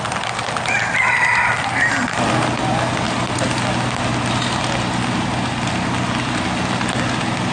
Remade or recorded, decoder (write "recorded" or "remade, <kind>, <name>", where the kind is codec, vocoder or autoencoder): recorded